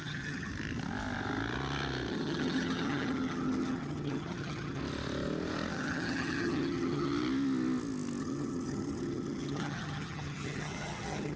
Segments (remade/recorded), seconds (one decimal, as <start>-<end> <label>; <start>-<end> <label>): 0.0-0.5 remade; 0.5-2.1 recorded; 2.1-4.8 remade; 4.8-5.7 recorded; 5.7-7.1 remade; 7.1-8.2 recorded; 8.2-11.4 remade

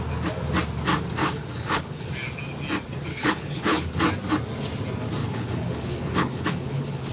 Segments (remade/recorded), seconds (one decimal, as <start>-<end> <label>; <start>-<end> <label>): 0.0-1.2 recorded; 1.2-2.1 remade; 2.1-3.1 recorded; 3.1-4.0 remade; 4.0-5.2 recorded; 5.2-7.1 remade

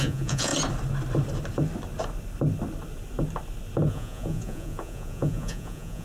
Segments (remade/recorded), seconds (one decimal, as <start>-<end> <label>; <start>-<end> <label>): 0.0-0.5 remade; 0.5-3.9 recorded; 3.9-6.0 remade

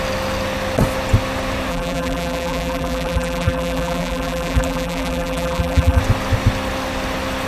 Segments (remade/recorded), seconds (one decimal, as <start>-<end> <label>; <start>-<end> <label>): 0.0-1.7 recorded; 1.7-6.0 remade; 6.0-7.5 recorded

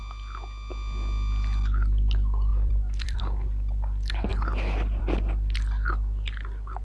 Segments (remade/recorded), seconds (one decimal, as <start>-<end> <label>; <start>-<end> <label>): 0.0-2.5 recorded; 2.5-3.2 remade; 3.2-6.8 recorded

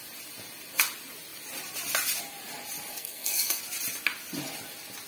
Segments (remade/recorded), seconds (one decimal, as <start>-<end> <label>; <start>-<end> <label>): 0.0-2.9 recorded; 2.9-3.6 remade; 3.6-5.1 recorded

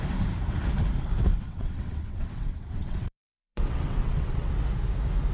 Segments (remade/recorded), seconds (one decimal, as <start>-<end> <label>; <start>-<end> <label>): 0.0-1.3 recorded; 1.3-4.5 remade; 4.5-5.3 recorded